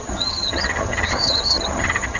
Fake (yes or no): yes